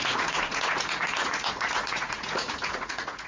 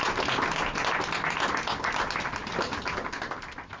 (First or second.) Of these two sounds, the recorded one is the second